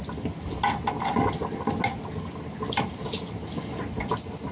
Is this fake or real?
real